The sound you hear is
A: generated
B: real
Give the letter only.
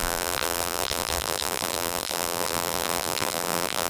A